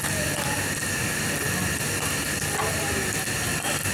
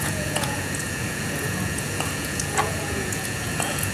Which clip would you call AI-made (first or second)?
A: second